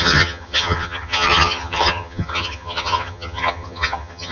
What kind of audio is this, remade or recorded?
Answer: remade